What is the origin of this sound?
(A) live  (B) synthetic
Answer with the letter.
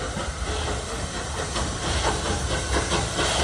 A